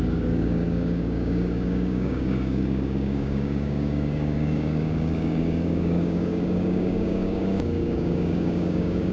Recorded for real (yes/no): no